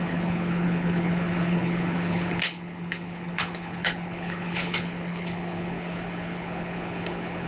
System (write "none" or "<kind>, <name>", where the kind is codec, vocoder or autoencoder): codec, HILCodec